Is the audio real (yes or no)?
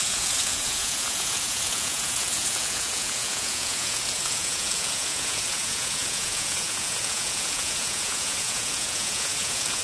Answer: no